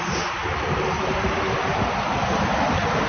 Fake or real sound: real